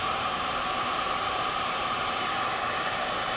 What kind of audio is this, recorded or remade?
remade